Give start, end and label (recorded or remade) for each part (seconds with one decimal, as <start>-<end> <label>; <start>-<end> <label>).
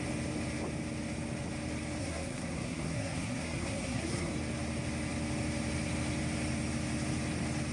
0.0-2.0 recorded; 2.0-4.3 remade; 4.3-7.7 recorded